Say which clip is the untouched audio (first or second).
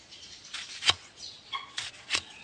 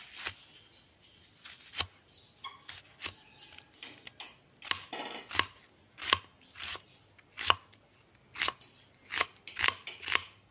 second